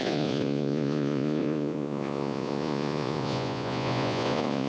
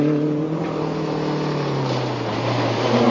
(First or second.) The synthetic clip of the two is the first